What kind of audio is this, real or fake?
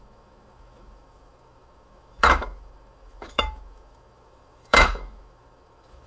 fake